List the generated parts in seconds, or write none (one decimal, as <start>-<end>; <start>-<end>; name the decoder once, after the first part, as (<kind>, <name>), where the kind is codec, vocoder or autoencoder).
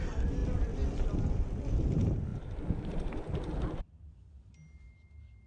none